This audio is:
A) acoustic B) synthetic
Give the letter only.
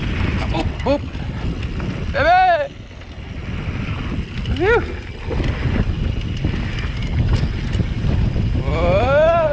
A